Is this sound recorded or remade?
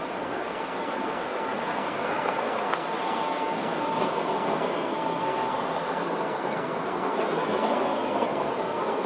remade